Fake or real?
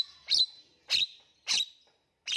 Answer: real